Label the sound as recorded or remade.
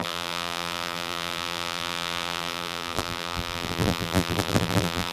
remade